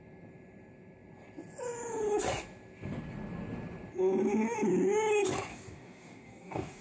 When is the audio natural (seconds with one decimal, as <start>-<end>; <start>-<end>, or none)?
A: 0.0-5.5